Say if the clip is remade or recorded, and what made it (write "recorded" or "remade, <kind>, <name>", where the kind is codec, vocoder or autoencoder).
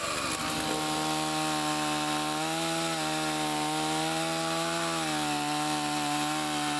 recorded